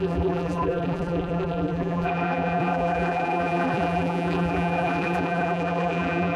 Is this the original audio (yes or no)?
no